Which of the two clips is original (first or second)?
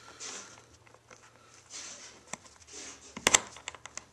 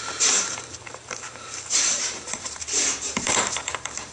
first